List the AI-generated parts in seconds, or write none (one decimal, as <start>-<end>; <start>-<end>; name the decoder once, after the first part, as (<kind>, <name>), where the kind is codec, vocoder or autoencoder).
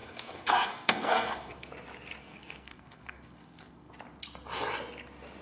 0.0-1.7 (codec, SNAC); 2.2-3.9